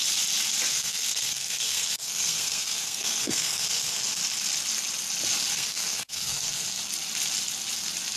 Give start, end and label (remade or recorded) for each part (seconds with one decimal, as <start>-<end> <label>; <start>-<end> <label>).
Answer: 0.0-0.7 recorded; 0.7-4.2 remade; 4.2-5.5 recorded; 5.5-6.8 remade; 6.8-8.2 recorded